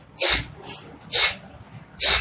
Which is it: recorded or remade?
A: recorded